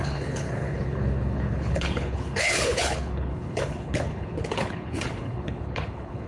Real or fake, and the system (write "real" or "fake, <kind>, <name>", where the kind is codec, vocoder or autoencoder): fake, codec, HILCodec